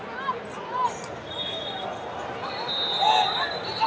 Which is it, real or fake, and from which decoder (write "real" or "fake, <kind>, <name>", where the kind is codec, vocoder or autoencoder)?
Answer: real